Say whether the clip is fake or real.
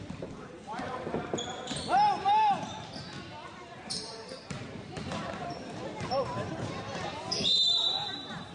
fake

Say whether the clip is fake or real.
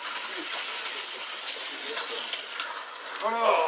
real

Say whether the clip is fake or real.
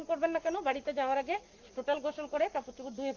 real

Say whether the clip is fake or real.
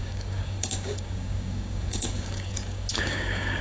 fake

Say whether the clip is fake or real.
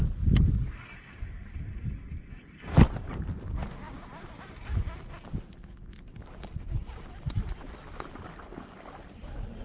real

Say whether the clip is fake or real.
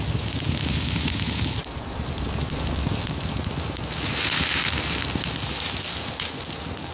real